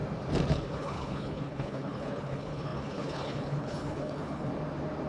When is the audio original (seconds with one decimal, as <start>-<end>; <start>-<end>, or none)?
0.0-0.5; 4.5-5.1